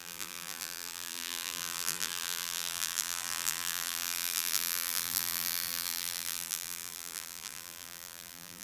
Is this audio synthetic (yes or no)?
yes